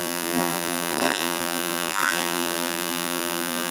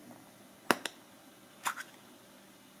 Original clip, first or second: second